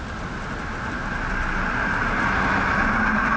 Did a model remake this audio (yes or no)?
no